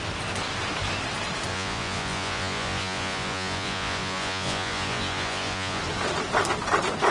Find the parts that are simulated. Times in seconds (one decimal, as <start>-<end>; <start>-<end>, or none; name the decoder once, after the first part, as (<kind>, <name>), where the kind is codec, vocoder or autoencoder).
1.5-5.8 (vocoder, Vocos)